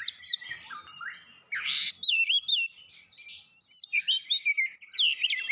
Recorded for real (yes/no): yes